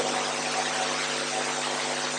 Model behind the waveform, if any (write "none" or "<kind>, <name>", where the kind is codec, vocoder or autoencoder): none